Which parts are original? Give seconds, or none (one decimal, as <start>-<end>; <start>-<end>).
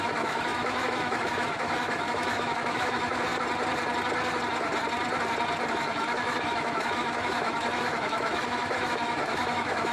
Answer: 3.3-5.7